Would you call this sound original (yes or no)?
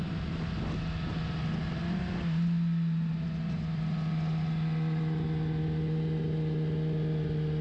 yes